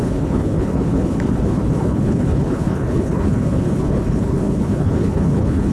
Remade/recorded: remade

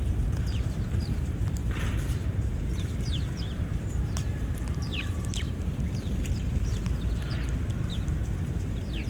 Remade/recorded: remade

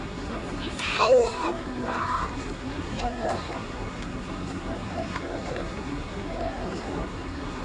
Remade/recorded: remade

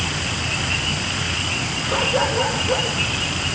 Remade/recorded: recorded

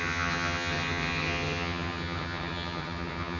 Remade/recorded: remade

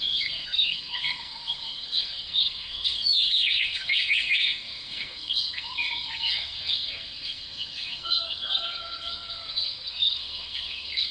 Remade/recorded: remade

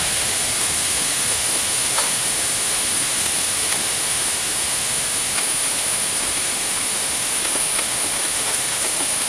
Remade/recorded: remade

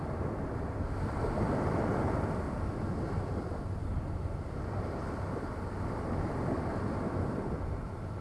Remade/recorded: remade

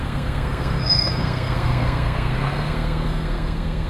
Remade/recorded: remade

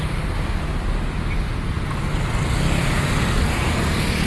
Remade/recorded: recorded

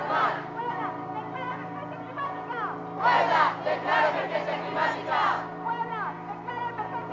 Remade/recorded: recorded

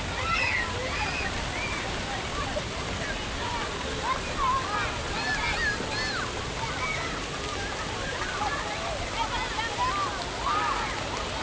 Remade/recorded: recorded